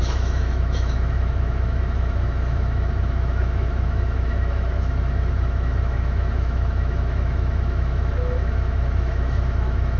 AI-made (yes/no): yes